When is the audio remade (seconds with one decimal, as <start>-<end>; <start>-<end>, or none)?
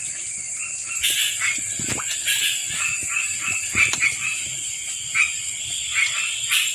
none